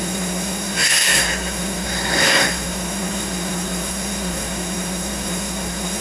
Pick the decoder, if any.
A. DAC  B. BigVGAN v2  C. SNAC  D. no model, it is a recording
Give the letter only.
C